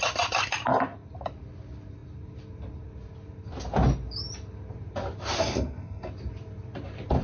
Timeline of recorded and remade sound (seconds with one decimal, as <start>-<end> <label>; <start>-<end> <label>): 0.0-5.4 recorded; 5.4-6.1 remade; 6.1-7.2 recorded